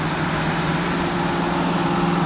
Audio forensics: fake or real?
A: real